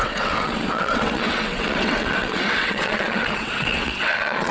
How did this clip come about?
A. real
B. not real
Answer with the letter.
B